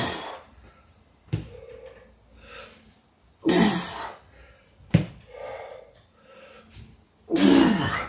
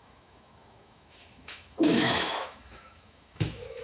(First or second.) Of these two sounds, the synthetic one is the second